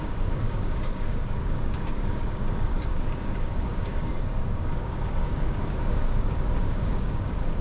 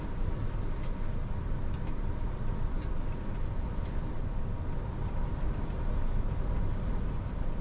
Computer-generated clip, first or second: first